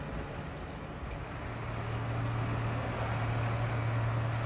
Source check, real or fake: real